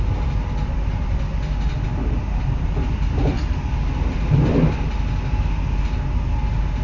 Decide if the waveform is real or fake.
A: real